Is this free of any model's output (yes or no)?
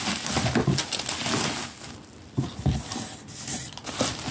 yes